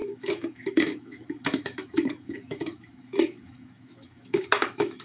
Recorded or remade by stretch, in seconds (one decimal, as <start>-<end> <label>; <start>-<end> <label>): 0.0-5.0 remade